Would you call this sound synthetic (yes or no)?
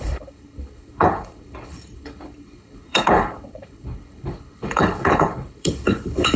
yes